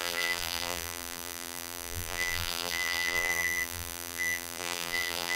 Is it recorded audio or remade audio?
remade